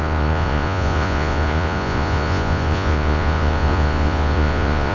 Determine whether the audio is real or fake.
fake